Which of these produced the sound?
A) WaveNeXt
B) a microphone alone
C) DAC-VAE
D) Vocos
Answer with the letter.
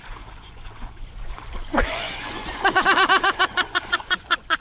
D